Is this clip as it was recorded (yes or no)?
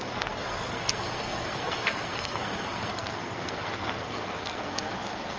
no